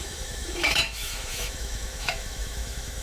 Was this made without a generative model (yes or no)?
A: no